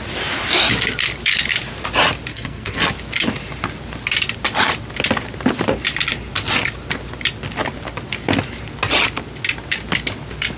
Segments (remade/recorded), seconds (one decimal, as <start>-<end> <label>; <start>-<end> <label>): 0.0-2.3 recorded; 2.3-2.9 remade; 2.9-10.6 recorded